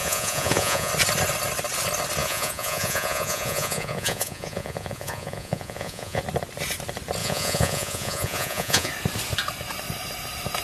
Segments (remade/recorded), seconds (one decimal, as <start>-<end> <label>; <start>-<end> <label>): 0.0-0.9 remade; 0.9-2.2 recorded; 2.2-6.2 remade; 6.2-7.2 recorded; 7.2-8.9 remade; 8.9-10.6 recorded